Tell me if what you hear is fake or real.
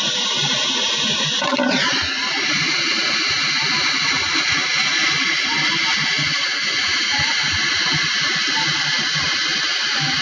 real